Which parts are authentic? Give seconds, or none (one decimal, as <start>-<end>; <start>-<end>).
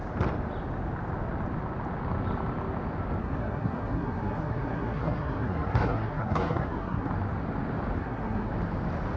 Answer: 0.0-3.2; 7.1-8.0; 8.5-9.2